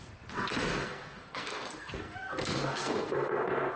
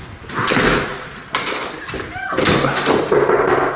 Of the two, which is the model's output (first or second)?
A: first